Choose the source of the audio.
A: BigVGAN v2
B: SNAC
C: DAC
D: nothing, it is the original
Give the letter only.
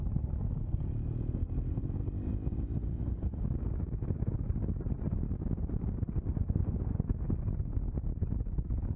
D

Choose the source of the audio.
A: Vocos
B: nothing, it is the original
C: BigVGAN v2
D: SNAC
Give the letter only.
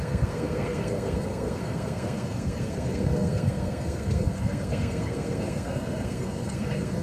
D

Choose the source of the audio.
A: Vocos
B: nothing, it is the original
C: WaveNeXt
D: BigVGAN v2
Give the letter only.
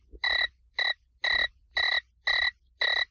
B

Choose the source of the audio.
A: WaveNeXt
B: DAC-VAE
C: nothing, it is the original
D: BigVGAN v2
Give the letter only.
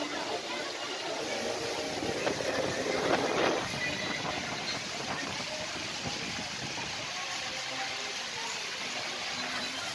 C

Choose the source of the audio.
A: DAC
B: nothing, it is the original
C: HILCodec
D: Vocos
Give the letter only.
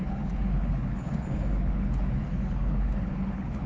C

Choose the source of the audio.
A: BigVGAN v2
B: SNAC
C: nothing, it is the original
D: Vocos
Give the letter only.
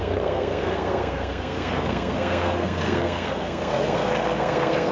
B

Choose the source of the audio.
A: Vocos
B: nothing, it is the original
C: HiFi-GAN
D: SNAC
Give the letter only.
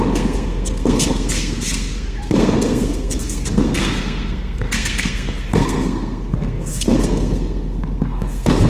D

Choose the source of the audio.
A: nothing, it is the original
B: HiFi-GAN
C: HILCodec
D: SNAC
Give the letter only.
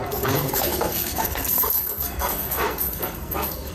D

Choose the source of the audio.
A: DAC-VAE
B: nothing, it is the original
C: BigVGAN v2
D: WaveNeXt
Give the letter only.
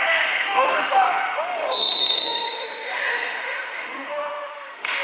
A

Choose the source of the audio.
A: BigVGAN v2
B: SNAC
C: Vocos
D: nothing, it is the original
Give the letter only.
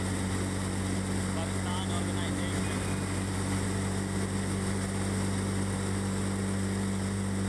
D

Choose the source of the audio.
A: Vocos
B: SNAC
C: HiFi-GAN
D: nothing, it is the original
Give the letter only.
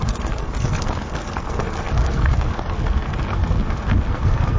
B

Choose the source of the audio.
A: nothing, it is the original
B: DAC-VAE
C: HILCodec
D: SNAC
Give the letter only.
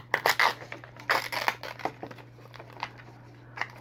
A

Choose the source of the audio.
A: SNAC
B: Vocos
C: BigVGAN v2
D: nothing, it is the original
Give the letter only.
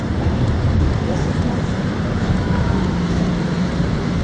C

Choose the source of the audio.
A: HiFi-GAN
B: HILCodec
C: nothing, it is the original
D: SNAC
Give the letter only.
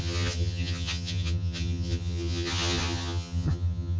A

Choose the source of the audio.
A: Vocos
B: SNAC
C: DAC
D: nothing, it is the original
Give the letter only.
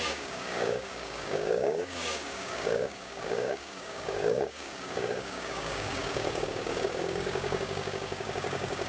C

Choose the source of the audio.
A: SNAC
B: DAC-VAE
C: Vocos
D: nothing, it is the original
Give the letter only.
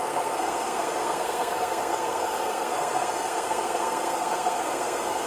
A